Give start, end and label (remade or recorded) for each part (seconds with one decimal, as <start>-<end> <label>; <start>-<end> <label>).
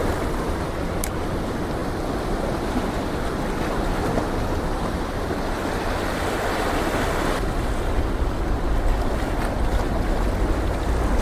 0.0-11.2 recorded